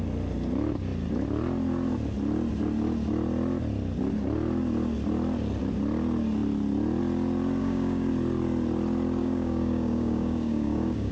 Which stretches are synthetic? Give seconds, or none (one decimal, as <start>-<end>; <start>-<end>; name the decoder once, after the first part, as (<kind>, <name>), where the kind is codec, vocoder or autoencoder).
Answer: 7.6-8.1 (codec, DAC); 9.2-11.1